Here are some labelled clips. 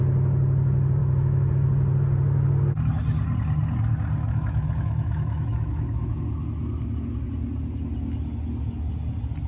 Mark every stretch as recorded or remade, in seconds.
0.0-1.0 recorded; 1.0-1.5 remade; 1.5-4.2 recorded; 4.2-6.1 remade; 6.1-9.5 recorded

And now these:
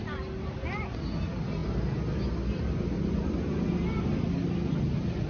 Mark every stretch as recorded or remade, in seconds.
0.0-5.3 recorded

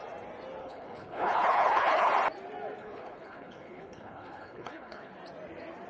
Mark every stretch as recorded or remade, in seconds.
0.0-0.6 recorded; 0.6-2.1 remade; 2.1-2.8 recorded; 2.8-5.1 remade; 5.1-5.9 recorded

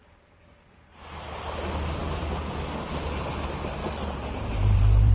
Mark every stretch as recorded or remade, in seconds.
0.0-3.8 recorded; 3.8-5.1 remade

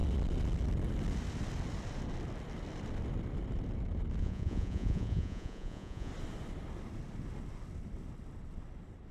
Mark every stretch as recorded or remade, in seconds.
0.0-4.2 recorded; 4.2-6.1 remade; 6.1-9.1 recorded

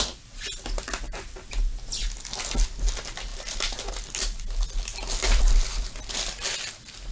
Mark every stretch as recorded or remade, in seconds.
0.0-7.1 recorded